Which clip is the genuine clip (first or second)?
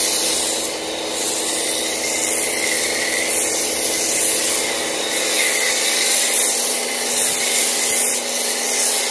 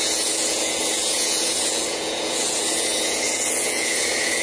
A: first